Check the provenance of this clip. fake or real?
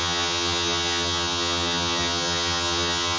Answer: fake